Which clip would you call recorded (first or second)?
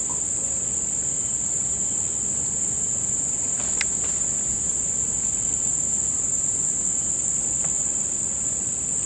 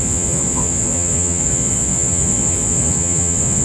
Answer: first